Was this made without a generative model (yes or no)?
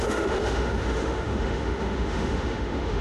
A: no